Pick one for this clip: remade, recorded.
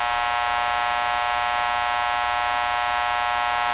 recorded